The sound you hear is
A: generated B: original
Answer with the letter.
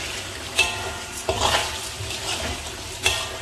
B